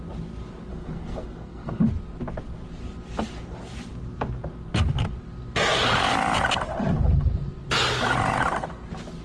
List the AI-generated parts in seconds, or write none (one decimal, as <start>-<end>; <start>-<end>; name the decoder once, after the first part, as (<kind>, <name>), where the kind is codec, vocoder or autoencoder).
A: 0.7-1.9 (codec, SNAC)